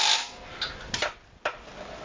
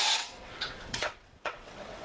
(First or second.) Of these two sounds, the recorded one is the first